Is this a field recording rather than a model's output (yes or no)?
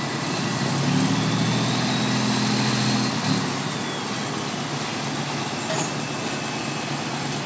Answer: yes